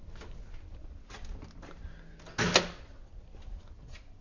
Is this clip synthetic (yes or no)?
no